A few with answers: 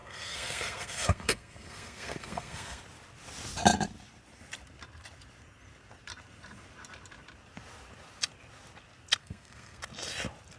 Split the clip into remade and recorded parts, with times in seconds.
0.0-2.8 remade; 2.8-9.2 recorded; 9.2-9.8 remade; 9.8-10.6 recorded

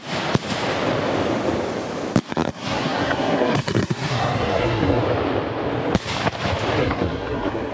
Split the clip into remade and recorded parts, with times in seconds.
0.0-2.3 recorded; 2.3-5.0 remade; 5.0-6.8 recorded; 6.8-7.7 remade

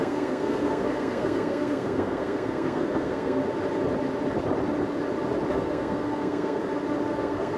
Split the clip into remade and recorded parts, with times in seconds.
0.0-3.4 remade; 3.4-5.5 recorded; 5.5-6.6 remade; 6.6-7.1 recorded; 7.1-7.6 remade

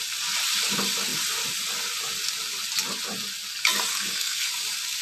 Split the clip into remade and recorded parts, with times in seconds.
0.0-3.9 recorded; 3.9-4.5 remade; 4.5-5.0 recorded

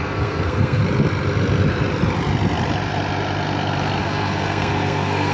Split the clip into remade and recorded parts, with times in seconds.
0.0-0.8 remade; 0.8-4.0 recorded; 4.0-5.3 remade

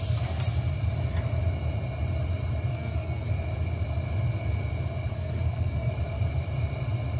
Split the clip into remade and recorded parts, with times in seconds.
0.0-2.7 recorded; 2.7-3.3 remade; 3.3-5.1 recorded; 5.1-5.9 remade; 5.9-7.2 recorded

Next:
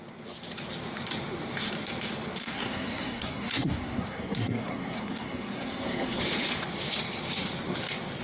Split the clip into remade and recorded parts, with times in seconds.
0.0-2.4 recorded; 2.4-6.2 remade; 6.2-8.2 recorded

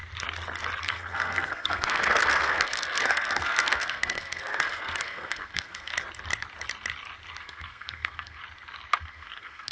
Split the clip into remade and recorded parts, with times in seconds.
0.0-0.8 recorded; 0.8-5.9 remade; 5.9-7.4 recorded; 7.4-8.4 remade; 8.4-9.0 recorded; 9.0-9.7 remade